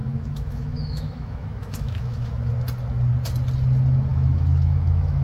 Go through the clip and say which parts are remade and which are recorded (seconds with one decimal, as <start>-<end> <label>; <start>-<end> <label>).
0.0-2.5 remade; 2.5-4.1 recorded; 4.1-5.2 remade